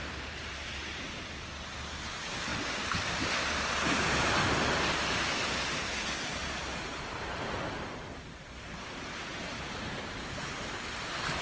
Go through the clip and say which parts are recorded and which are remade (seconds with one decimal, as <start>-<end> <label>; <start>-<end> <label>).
0.0-0.5 remade; 0.5-2.5 recorded; 2.5-3.3 remade; 3.3-6.4 recorded; 6.4-11.4 remade